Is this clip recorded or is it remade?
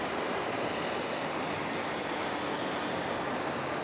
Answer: recorded